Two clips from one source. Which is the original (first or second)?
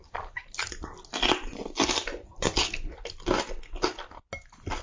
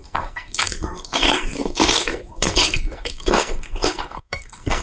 first